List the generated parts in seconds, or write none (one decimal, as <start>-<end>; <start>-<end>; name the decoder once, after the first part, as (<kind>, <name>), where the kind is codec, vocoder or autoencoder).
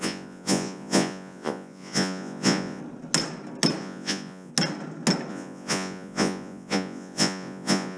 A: 0.0-2.8 (vocoder, Vocos); 3.8-4.5; 5.3-8.0